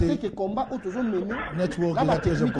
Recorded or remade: recorded